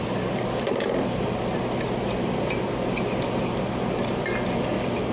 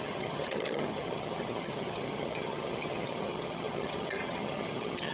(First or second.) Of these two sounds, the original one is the first